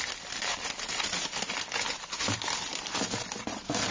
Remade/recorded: recorded